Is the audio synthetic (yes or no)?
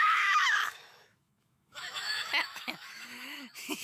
yes